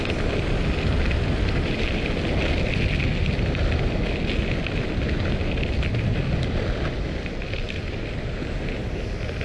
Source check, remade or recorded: recorded